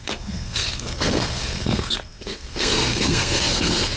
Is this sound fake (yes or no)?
yes